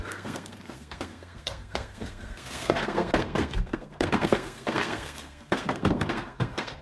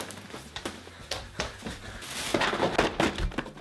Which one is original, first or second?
second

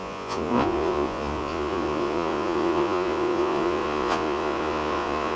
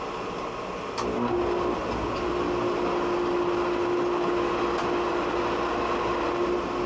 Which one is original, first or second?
second